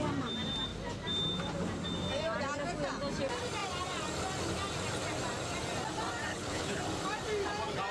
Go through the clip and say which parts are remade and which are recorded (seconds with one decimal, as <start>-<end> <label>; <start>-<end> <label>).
0.0-6.3 recorded; 6.3-6.8 remade; 6.8-7.9 recorded